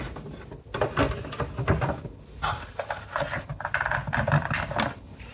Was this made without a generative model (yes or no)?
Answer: yes